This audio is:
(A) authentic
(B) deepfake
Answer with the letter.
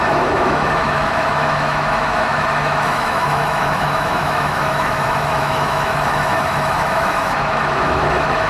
B